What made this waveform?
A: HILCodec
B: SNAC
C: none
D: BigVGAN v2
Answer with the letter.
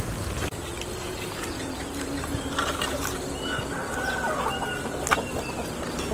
C